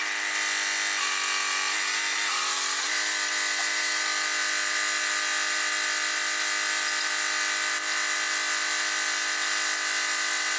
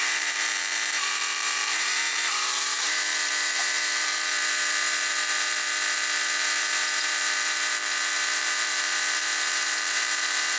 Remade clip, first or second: second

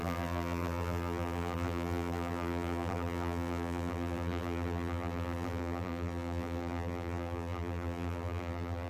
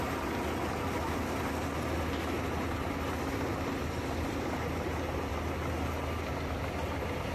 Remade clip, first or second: first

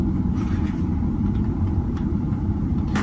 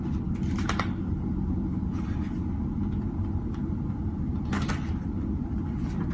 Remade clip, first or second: first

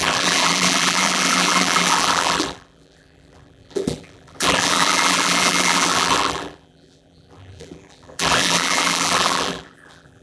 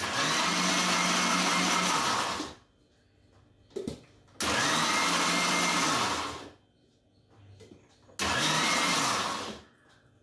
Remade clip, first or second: first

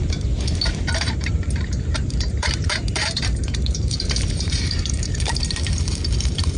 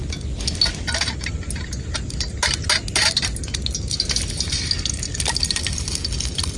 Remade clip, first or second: first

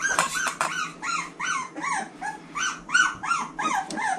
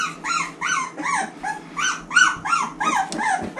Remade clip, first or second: first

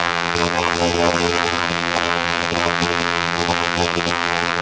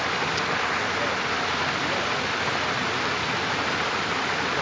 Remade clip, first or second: first